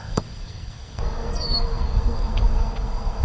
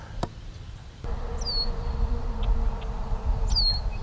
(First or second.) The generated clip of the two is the first